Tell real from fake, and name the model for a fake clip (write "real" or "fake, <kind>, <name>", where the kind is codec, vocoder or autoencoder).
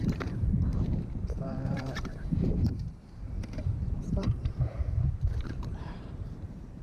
fake, vocoder, BigVGAN v2